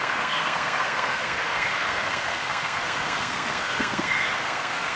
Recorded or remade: remade